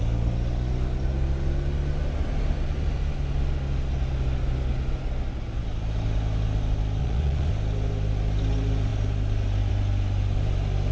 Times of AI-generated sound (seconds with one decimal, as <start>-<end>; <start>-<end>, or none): 7.0-7.5